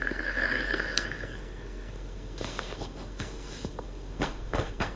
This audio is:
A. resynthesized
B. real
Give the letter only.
A